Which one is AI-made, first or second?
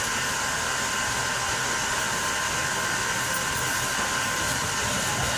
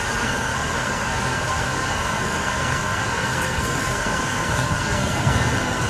second